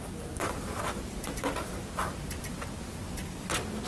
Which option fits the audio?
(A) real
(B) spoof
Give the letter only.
A